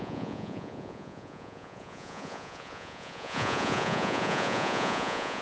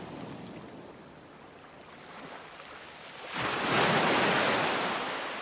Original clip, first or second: second